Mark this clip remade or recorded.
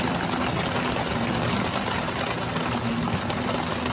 recorded